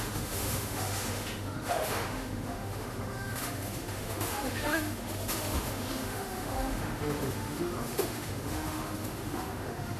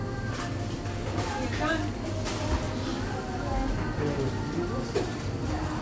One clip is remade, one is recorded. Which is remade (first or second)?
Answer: first